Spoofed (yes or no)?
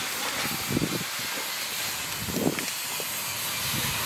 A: no